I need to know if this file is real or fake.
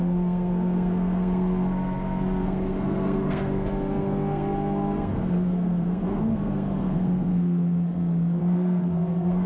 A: fake